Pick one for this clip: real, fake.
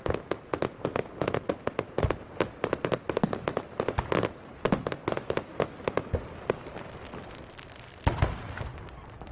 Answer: real